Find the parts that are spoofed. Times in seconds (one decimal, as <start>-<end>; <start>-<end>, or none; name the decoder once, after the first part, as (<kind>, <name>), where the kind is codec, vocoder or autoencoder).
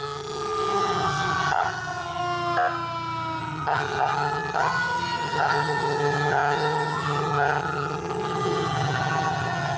0.0-2.2 (vocoder, HiFi-GAN); 3.4-9.8